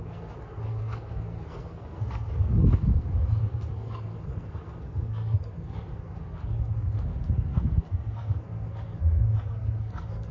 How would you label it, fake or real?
fake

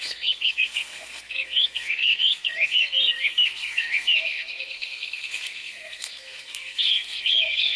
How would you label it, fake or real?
fake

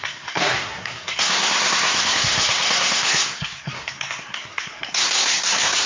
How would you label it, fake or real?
fake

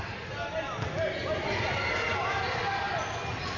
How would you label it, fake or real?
real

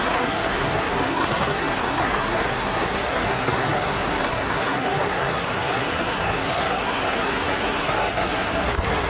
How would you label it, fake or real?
fake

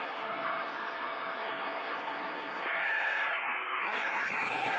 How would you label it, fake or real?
fake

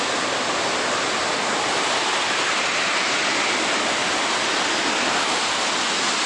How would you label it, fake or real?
real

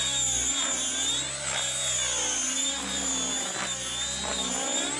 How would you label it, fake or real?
real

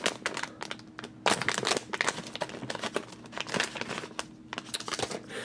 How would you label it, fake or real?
real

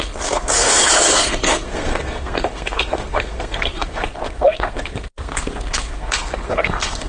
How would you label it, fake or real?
fake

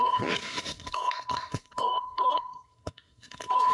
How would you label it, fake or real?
fake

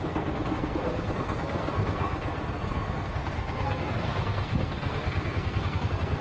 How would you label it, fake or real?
fake